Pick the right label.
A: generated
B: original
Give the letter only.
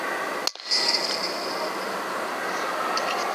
B